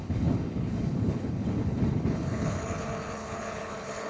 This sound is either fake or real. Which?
fake